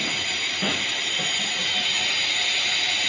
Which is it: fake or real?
real